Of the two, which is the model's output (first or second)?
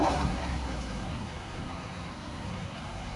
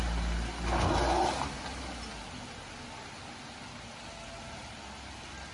first